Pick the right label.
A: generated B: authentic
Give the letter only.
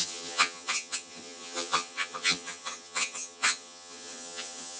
A